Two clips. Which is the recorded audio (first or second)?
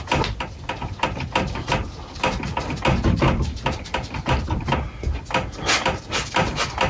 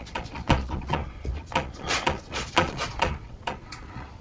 first